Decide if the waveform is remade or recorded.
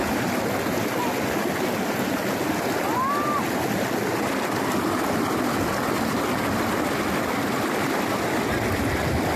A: recorded